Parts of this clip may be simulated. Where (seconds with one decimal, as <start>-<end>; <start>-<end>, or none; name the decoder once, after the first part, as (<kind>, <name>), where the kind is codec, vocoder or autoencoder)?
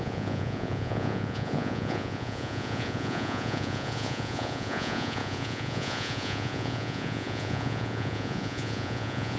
0.0-9.4 (vocoder, Vocos)